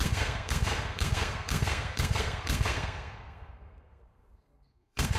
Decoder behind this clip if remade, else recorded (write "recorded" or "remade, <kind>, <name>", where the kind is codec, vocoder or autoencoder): remade, codec, SNAC